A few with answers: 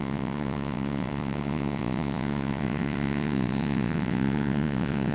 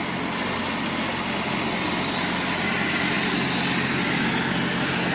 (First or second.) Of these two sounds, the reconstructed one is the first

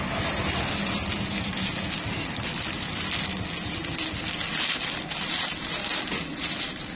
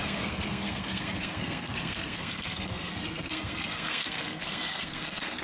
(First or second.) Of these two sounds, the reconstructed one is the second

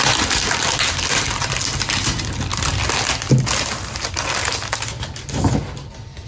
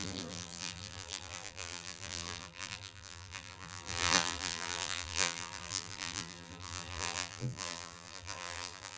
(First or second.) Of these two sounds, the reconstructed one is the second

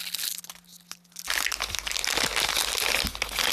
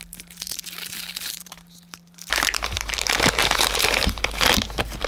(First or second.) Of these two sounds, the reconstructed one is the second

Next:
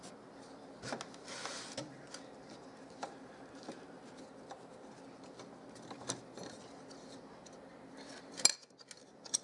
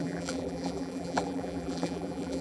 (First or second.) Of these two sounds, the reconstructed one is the second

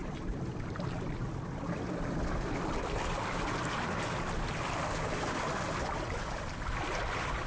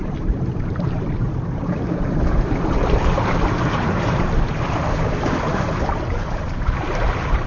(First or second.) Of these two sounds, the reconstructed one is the second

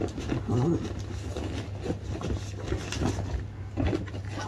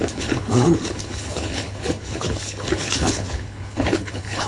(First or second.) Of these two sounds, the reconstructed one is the second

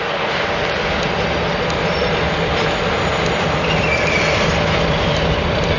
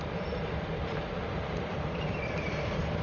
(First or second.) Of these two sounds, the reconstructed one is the second